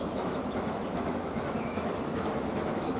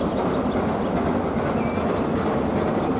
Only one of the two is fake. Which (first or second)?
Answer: first